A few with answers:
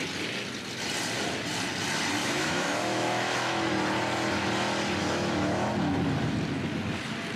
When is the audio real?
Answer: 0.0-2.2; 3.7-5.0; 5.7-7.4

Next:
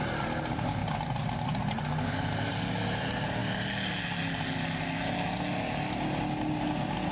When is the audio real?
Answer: 0.0-7.1

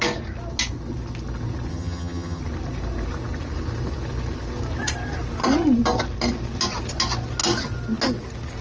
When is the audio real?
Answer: 0.0-1.7; 2.4-8.6

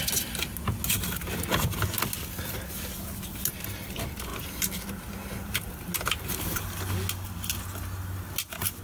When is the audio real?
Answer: 0.0-8.8

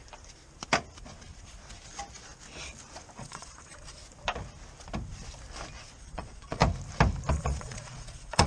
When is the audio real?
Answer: 0.0-3.2; 4.0-6.0; 6.6-7.3